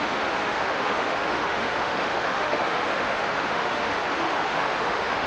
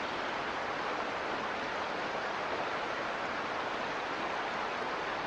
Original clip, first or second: second